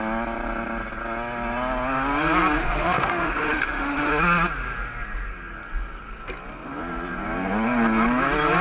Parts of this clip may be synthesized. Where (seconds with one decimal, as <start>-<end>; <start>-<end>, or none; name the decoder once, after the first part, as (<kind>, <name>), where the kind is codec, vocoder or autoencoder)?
2.6-4.1 (autoencoder, DAC-VAE)